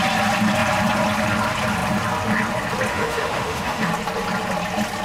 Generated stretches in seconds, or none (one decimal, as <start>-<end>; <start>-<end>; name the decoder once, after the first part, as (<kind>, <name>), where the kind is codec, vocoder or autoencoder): 2.9-3.9 (autoencoder, DAC-VAE)